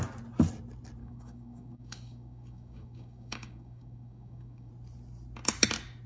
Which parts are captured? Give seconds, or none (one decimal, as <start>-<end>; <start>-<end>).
0.0-1.0; 4.7-6.1